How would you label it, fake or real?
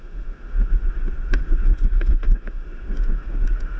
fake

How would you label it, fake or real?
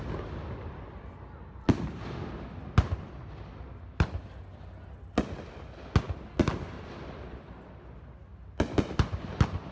real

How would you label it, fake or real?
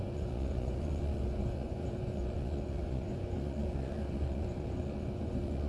fake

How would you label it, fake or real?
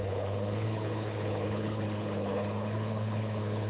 fake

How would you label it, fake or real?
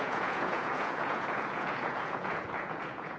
fake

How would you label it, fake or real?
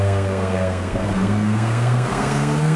fake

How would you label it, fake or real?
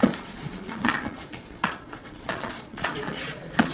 fake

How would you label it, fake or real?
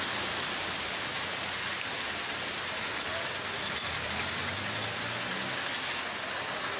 real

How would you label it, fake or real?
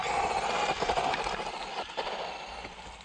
real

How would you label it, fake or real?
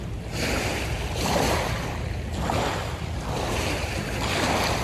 real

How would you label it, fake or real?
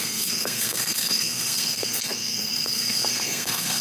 fake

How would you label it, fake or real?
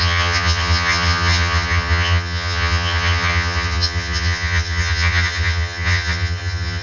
fake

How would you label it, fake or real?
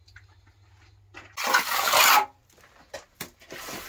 real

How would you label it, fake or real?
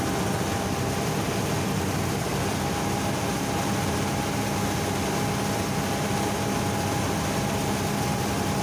real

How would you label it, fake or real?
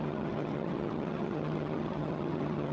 fake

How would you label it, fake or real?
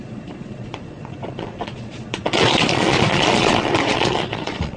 fake